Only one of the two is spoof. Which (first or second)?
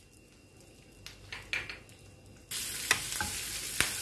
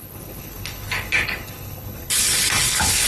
second